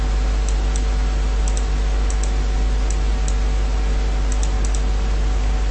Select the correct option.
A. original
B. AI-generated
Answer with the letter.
A